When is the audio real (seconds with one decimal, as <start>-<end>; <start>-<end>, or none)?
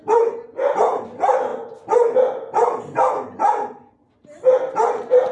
1.5-4.7